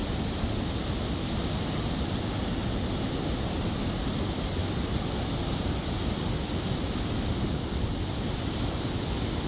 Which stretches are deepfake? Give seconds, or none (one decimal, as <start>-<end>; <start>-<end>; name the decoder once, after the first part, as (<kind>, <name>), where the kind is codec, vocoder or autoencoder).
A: none